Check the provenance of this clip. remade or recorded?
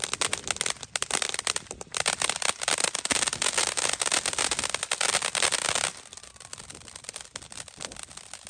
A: recorded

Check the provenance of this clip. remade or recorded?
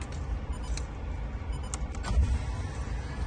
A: recorded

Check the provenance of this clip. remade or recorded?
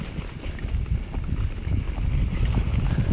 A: recorded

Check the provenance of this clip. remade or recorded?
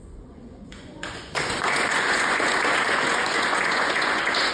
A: remade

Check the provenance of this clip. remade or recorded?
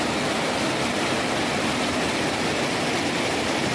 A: recorded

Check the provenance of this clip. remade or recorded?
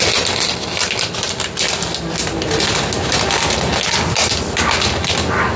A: recorded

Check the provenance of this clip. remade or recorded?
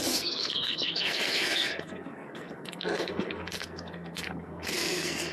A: remade